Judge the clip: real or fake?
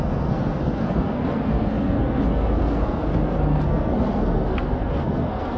fake